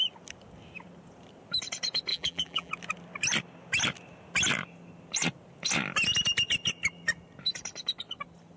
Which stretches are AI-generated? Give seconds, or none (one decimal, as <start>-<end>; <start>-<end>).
2.1-2.7